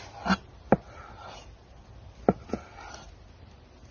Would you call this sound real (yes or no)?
yes